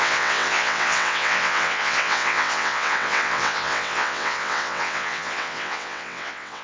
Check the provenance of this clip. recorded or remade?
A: remade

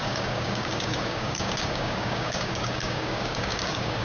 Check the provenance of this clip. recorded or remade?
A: remade